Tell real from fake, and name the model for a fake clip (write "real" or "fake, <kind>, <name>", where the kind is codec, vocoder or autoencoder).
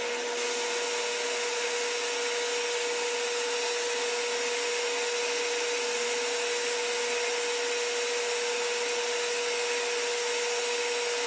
real